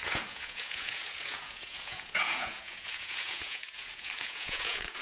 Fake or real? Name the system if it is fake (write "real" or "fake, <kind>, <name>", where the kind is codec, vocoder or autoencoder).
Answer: fake, vocoder, Vocos